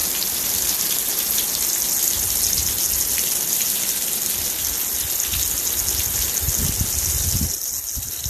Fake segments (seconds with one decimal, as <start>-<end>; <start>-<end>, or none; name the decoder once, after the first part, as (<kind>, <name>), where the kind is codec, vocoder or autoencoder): none

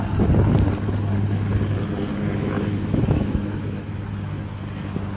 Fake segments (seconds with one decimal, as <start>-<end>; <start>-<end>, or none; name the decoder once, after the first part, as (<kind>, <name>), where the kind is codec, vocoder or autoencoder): 2.1-3.8 (autoencoder, DAC-VAE)